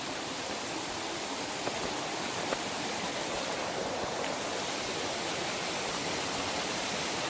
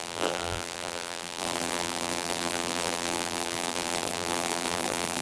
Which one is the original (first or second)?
first